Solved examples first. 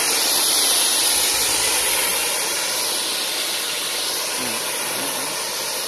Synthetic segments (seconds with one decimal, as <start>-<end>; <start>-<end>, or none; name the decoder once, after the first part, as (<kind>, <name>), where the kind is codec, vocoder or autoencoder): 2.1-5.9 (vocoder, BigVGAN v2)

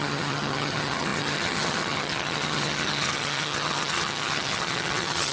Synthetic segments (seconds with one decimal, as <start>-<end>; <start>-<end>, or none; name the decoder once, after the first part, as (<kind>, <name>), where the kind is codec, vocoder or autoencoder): 0.0-5.3 (vocoder, HiFi-GAN)

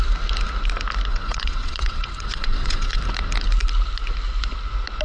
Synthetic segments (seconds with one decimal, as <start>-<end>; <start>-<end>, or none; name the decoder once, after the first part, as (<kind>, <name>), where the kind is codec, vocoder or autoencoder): 1.1-3.0 (vocoder, WaveNeXt)

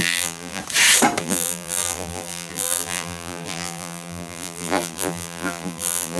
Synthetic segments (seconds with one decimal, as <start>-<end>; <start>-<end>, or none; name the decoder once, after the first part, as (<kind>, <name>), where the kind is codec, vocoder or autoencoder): 0.0-0.6 (vocoder, BigVGAN v2); 1.2-6.2